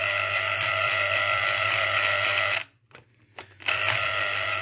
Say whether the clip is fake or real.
fake